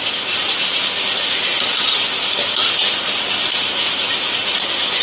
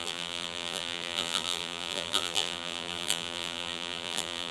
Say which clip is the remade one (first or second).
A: second